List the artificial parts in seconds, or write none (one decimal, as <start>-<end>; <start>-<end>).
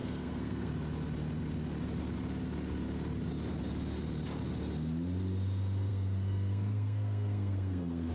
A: 0.0-0.7; 5.9-8.1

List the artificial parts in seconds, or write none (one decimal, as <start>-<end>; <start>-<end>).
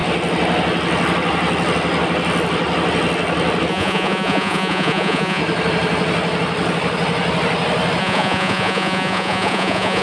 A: 3.7-5.4; 8.0-10.0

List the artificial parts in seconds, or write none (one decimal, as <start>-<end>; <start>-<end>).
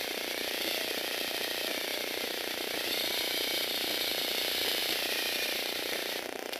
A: 1.9-4.1; 4.8-6.6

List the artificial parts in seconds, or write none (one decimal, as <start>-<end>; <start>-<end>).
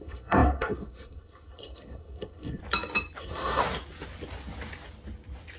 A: 0.0-2.6; 3.2-3.6